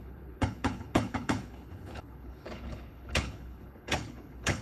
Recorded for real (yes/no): no